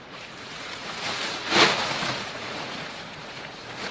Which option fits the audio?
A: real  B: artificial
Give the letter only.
B